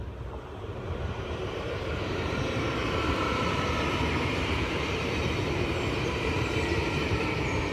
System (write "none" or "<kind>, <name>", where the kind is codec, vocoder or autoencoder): vocoder, BigVGAN v2